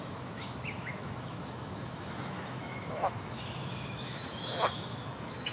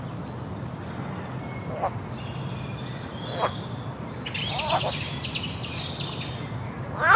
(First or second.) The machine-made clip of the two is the first